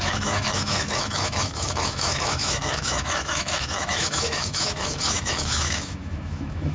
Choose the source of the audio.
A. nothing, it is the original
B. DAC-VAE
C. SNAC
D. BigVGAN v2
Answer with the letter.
B